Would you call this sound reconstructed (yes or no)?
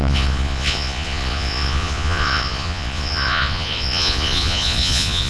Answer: yes